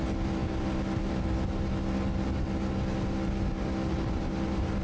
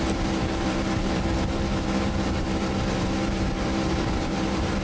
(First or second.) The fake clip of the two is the second